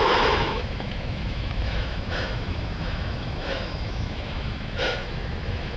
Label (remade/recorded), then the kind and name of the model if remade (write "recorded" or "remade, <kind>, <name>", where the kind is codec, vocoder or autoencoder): remade, autoencoder, DAC-VAE